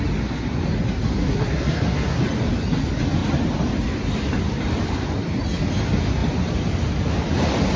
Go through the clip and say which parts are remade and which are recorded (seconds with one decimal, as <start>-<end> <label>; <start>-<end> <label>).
0.0-1.2 recorded; 1.2-2.2 remade; 2.2-7.8 recorded